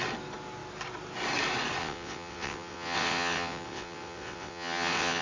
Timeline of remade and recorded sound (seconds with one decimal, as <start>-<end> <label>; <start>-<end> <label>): 0.0-1.8 recorded; 1.8-5.2 remade